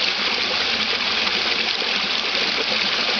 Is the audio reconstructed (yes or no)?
no